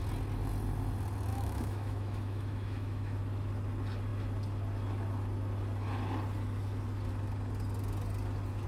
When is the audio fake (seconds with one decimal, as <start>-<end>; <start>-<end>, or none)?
1.3-3.2